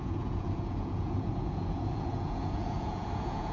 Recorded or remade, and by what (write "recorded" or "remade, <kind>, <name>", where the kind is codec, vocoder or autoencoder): remade, vocoder, Vocos